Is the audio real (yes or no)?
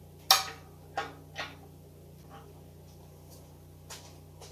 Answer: yes